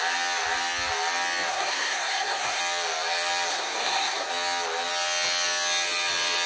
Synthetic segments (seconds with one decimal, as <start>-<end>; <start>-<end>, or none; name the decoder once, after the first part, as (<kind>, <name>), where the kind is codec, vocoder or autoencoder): 1.5-2.6 (codec, SNAC); 3.5-4.3